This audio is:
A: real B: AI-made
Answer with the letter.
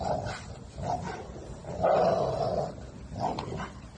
A